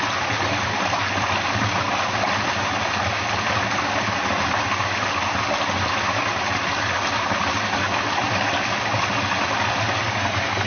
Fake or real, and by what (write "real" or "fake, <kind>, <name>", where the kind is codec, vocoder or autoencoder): real